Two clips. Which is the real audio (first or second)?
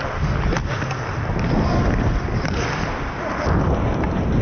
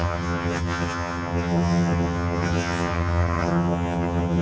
first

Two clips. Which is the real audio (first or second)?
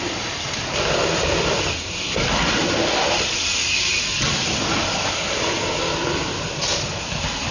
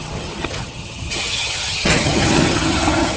first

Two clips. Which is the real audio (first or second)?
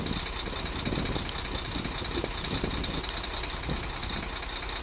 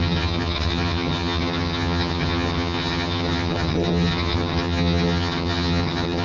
first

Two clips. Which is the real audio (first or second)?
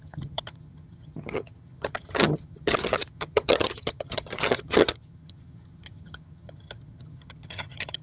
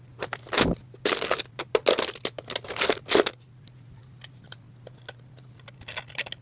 second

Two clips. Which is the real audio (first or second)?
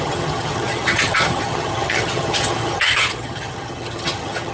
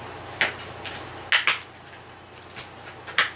second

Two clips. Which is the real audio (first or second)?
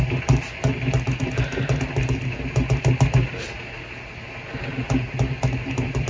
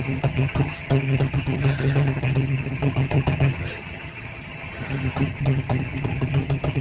first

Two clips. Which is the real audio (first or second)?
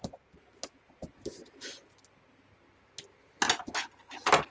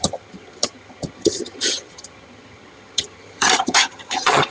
first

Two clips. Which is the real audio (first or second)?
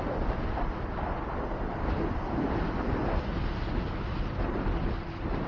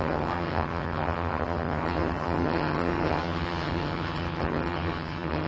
first